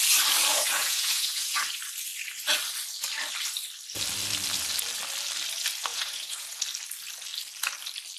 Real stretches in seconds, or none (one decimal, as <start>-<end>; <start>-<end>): 0.0-0.5; 1.6-5.9; 6.6-8.2